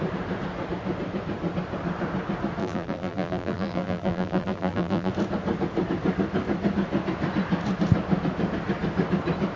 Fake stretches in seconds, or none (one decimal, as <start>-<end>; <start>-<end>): 2.6-5.1